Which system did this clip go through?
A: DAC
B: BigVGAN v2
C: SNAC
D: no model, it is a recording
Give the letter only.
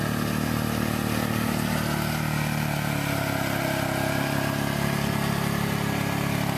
D